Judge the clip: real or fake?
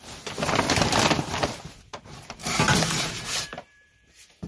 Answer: fake